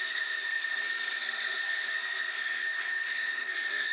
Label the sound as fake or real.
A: fake